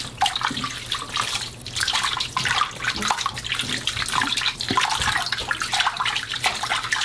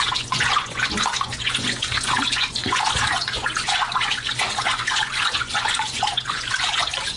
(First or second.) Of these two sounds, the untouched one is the first